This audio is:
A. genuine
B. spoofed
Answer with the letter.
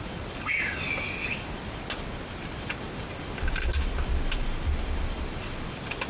A